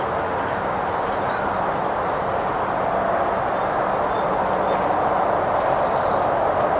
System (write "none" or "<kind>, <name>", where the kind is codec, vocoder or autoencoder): none